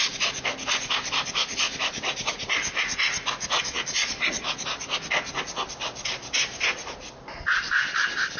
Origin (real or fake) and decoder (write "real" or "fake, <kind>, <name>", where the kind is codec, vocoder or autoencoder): real